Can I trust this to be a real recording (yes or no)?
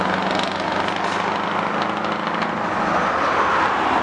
yes